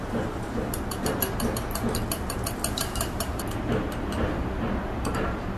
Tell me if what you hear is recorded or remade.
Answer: recorded